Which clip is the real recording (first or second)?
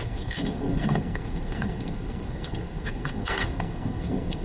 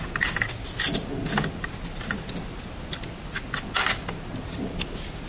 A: second